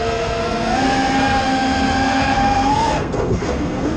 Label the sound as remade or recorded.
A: remade